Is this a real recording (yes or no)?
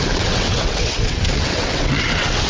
no